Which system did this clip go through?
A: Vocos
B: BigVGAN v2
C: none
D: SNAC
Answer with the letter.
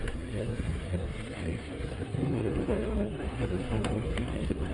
D